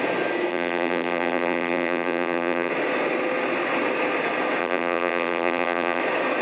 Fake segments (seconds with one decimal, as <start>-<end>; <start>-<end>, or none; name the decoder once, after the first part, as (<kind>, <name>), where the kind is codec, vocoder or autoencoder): 0.5-2.7 (vocoder, BigVGAN v2); 4.6-6.0